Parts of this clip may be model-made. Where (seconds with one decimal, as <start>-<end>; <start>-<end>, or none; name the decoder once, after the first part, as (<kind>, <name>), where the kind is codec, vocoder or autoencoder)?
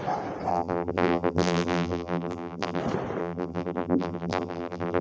0.5-2.8 (vocoder, BigVGAN v2); 3.2-5.0